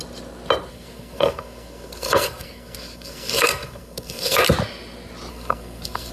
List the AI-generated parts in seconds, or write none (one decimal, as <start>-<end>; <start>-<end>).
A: 0.7-4.4; 5.3-6.1